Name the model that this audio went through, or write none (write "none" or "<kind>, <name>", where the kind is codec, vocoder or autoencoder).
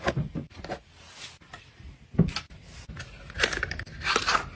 none